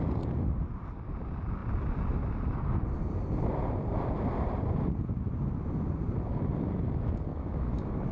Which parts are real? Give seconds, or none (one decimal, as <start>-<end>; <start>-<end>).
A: 0.0-7.3